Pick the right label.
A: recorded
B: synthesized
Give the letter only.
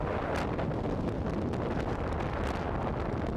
A